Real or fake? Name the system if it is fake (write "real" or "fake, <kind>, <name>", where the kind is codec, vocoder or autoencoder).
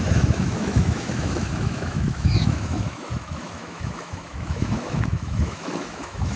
fake, autoencoder, DAC-VAE